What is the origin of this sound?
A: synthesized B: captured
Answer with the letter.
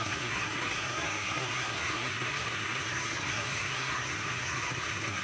A